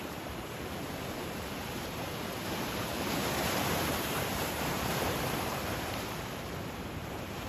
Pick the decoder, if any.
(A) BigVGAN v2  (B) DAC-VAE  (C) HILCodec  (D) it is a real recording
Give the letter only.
A